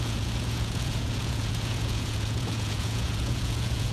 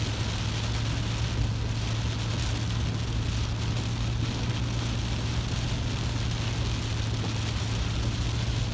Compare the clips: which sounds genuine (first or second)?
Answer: second